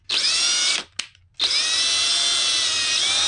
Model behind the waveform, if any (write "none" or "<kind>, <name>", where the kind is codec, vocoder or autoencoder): none